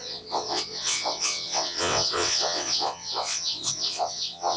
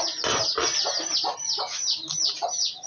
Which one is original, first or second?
second